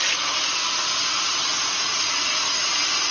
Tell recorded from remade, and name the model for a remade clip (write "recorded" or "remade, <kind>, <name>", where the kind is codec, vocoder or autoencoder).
recorded